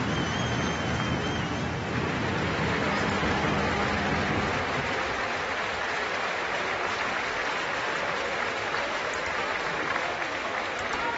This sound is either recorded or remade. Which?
recorded